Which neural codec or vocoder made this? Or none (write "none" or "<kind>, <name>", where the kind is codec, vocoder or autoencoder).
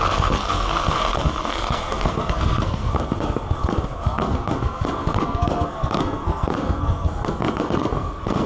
codec, SNAC